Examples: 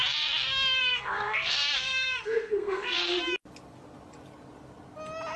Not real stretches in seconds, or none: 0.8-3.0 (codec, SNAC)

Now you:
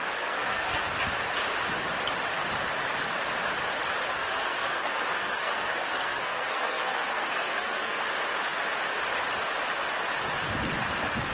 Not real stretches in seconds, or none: 0.0-1.0 (codec, SNAC); 4.1-8.0

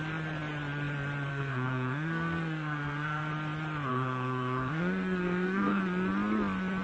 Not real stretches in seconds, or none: 1.3-3.3 (codec, SNAC); 3.9-5.8

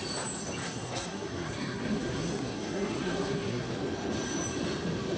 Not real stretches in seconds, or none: 0.6-3.7 (codec, SNAC)

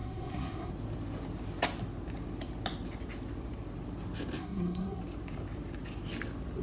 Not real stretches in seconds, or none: 0.0-0.7 (codec, SNAC); 4.4-5.0

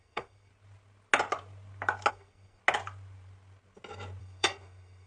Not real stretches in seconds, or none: 0.0-0.5 (codec, SNAC); 2.1-2.6; 4.2-5.1

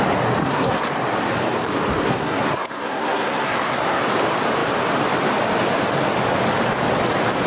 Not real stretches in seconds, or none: 0.4-0.9 (codec, SNAC); 2.0-4.0

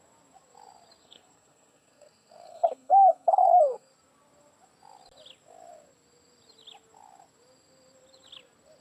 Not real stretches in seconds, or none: 1.0-3.9 (codec, SNAC)